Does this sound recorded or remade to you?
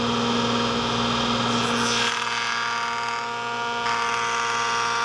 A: recorded